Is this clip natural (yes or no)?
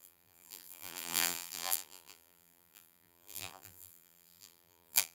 no